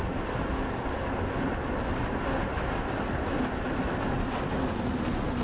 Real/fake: real